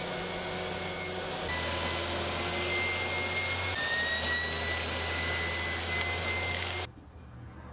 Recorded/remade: recorded